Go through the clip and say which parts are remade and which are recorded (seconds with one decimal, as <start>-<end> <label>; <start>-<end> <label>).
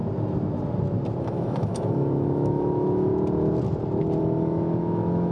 0.0-1.2 recorded; 1.2-3.1 remade; 3.1-4.2 recorded; 4.2-5.3 remade